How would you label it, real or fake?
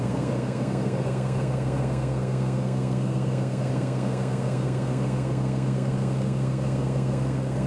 fake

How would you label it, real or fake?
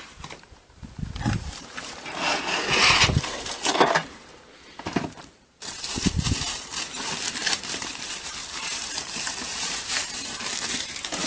fake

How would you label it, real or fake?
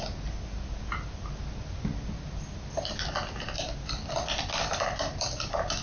real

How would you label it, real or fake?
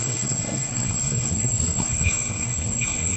fake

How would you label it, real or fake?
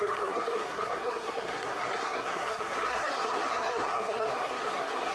fake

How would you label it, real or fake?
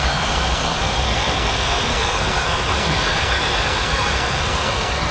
fake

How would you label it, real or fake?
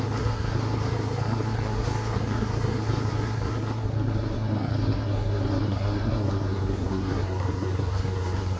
fake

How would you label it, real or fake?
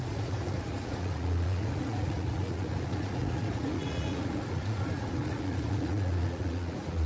fake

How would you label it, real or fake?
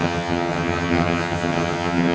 fake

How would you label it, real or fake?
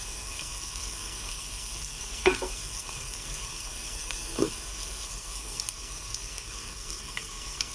fake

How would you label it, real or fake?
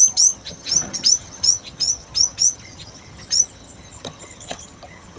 fake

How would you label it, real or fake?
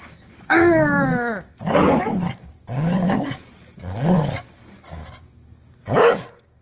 fake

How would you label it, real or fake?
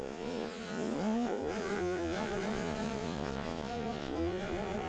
fake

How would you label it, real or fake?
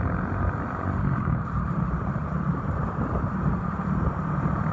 fake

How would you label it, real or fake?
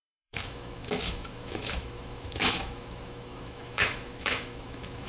fake